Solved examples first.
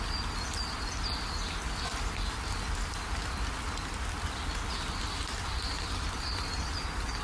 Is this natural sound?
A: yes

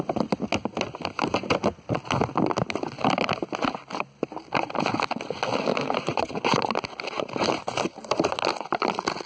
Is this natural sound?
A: yes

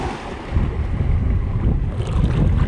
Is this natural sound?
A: yes